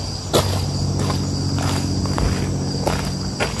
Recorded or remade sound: recorded